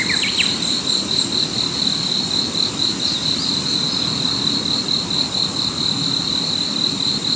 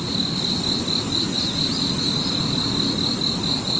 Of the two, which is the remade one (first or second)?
first